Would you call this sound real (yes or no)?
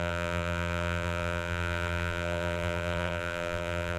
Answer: no